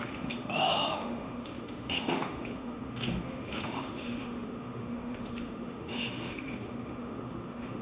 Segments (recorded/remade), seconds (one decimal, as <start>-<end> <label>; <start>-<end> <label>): 0.0-7.8 remade